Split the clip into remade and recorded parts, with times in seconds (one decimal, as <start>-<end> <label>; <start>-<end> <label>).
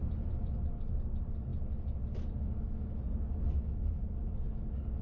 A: 0.0-5.0 recorded